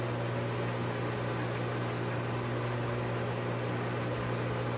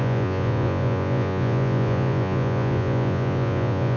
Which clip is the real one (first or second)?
first